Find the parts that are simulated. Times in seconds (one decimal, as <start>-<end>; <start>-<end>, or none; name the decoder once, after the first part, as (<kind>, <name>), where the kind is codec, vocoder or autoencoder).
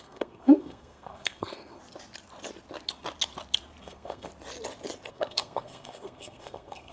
0.0-1.8 (codec, SNAC); 3.8-4.3; 5.1-6.9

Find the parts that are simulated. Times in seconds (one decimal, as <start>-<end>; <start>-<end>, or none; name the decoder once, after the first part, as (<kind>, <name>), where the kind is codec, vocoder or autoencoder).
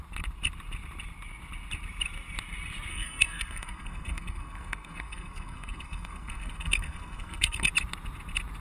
2.9-7.7 (codec, SNAC)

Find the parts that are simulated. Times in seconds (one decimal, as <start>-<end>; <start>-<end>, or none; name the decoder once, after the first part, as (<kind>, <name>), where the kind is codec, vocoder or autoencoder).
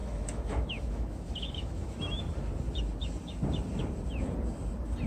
0.0-2.2 (autoencoder, DAC-VAE)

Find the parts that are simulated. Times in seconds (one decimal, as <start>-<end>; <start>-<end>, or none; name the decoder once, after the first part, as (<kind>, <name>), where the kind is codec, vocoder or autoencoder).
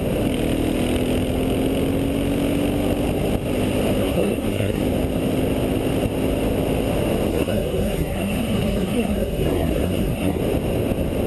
4.0-4.8 (codec, SNAC); 7.3-10.4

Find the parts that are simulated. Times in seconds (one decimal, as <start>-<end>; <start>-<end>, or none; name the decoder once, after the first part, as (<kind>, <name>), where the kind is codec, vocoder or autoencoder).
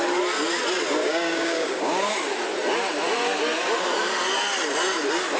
1.0-2.1 (codec, DAC)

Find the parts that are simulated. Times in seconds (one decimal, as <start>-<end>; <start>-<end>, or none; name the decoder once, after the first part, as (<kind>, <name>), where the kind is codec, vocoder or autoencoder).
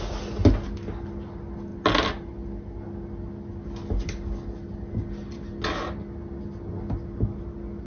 none